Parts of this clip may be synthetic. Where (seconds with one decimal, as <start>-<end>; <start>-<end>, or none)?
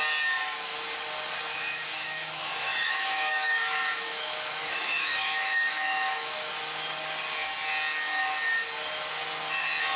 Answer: 1.5-6.5